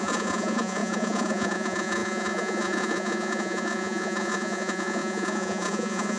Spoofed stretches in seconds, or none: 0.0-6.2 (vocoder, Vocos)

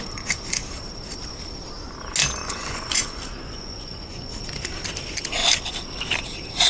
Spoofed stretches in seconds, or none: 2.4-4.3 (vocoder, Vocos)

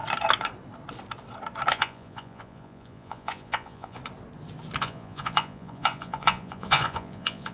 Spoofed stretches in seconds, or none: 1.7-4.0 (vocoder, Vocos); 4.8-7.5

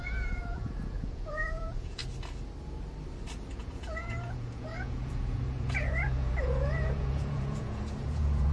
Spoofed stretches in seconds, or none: 0.0-2.0 (vocoder, Vocos); 3.5-8.5

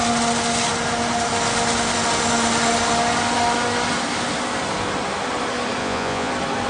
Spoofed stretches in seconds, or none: 5.8-6.3 (vocoder, Vocos)

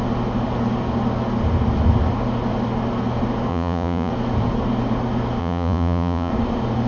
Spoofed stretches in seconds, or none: 3.5-4.1 (vocoder, Vocos); 5.4-6.3

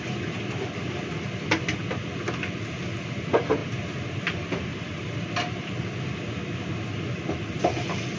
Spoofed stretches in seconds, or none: none